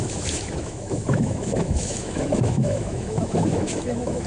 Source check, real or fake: fake